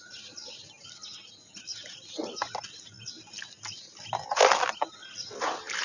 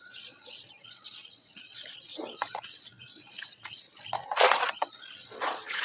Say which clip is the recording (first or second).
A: first